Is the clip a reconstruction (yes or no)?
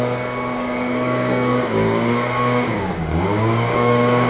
yes